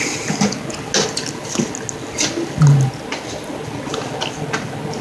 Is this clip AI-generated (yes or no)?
no